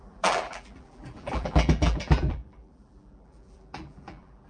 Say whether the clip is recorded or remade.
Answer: remade